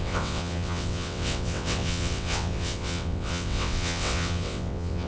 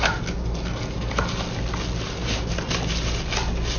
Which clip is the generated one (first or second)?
first